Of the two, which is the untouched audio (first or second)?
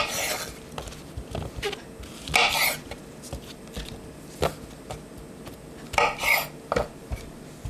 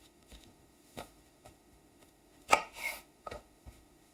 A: first